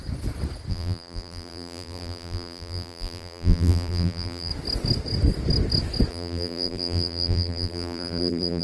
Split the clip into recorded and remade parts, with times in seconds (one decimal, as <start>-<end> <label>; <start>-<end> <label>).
0.0-0.7 recorded; 0.7-4.5 remade; 4.5-6.1 recorded; 6.1-8.6 remade